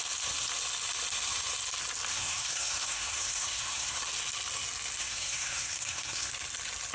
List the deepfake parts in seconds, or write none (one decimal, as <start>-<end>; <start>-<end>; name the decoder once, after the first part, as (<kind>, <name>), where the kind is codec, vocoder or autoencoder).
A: 2.1-4.0 (codec, SNAC); 5.0-6.3

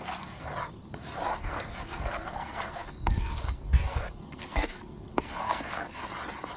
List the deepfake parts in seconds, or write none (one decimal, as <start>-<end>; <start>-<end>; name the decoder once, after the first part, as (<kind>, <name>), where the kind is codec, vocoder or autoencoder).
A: 0.0-0.5 (codec, SNAC); 1.4-6.0

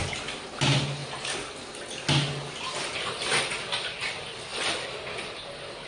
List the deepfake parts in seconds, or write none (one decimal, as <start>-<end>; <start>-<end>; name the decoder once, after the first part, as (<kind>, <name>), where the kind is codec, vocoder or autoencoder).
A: none

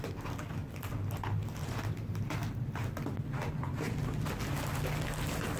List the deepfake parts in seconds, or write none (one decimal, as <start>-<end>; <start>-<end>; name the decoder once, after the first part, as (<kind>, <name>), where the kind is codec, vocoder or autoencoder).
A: none

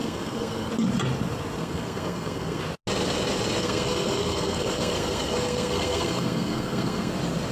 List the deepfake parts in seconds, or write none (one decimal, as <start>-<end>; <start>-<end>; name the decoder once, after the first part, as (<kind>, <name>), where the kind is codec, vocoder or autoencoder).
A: 0.0-0.7 (codec, SNAC); 1.6-2.6; 3.6-7.1